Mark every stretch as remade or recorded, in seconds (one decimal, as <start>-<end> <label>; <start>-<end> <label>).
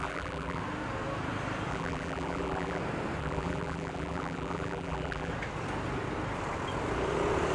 0.0-0.6 remade; 0.6-1.7 recorded; 1.7-2.8 remade; 2.8-3.2 recorded; 3.2-5.3 remade; 5.3-7.5 recorded